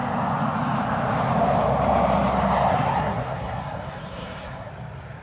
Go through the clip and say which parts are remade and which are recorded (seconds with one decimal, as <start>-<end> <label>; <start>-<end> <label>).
0.0-2.7 recorded; 2.7-4.7 remade; 4.7-5.2 recorded

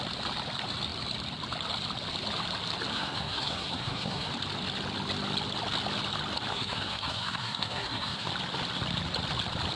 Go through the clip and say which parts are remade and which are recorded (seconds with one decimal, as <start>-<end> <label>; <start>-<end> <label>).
0.0-2.9 recorded; 2.9-4.3 remade; 4.3-6.5 recorded; 6.5-8.3 remade; 8.3-9.8 recorded